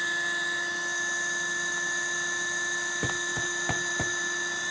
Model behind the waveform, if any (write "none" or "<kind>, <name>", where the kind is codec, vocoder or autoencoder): none